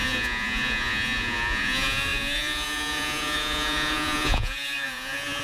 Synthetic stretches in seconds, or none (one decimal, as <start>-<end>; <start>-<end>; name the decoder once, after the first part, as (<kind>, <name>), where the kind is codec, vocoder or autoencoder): 0.0-5.4 (vocoder, Vocos)